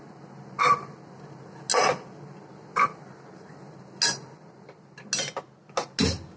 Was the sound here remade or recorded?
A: recorded